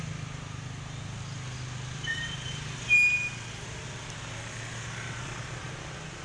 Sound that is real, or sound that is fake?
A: real